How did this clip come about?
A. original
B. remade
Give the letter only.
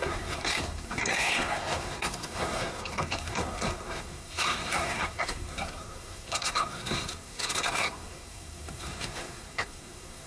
B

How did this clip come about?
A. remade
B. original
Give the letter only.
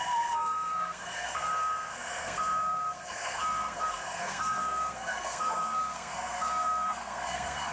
A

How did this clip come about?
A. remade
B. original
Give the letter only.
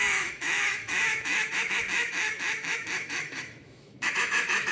A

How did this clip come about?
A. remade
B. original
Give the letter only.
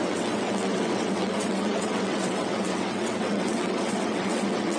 A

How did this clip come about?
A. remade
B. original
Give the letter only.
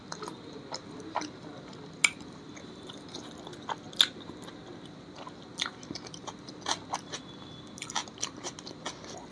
B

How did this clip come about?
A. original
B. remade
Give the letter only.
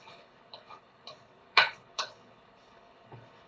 B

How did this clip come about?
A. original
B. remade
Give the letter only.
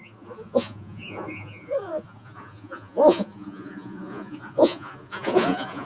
B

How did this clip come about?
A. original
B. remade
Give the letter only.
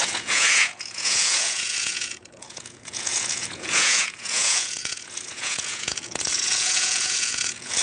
B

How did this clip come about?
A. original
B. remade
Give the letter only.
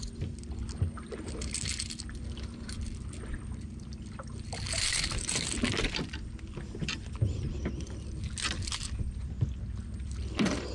B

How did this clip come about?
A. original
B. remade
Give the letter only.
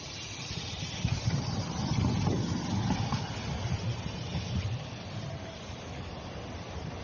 A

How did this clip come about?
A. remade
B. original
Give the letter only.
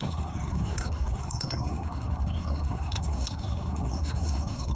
A